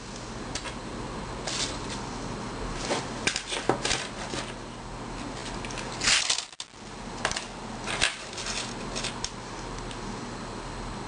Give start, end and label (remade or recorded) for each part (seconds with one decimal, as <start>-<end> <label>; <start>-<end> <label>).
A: 0.0-11.1 recorded